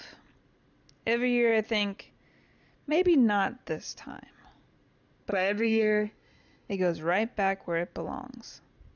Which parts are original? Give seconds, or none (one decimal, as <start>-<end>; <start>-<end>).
0.0-5.3; 6.7-9.0